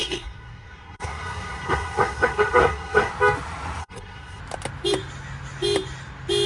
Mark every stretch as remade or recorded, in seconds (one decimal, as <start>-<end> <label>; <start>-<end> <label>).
0.0-3.1 remade; 3.1-3.8 recorded; 3.8-4.4 remade; 4.4-6.5 recorded